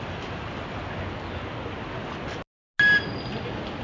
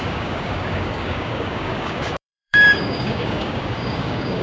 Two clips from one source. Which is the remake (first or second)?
second